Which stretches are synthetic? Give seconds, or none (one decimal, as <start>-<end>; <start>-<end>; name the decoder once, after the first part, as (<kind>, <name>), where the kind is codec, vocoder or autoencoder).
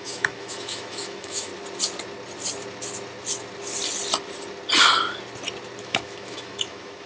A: 0.0-1.5 (autoencoder, DAC-VAE); 5.8-7.1